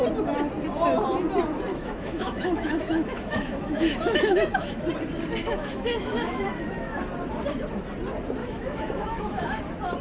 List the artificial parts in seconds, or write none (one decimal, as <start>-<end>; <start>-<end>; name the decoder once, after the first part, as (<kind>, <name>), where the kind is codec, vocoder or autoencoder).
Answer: 1.7-4.8 (autoencoder, DAC-VAE); 5.4-7.0; 8.4-9.6